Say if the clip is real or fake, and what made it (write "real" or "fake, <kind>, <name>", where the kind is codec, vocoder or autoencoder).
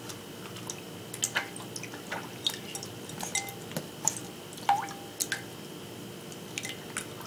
real